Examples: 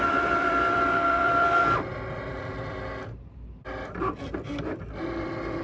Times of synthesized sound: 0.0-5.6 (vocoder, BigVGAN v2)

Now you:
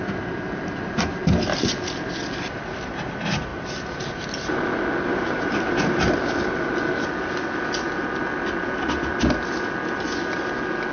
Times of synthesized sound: 3.5-4.2 (vocoder, BigVGAN v2); 5.1-6.1

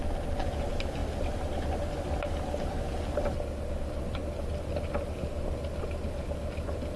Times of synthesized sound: none

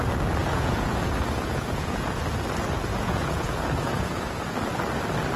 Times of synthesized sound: 0.4-2.2 (vocoder, Vocos); 2.9-4.4

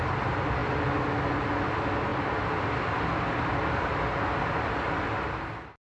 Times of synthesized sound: none

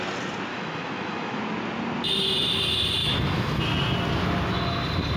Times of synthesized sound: 0.5-1.4 (autoencoder, DAC-VAE); 3.0-3.6

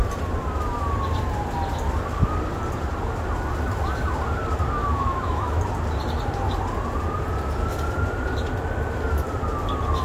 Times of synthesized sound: 4.8-5.6 (autoencoder, DAC-VAE)